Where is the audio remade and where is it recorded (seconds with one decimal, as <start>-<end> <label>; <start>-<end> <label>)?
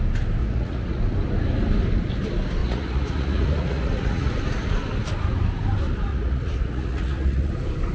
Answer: 0.0-0.4 recorded; 0.4-1.0 remade; 1.0-2.6 recorded; 2.6-4.3 remade; 4.3-6.1 recorded; 6.1-7.5 remade; 7.5-7.9 recorded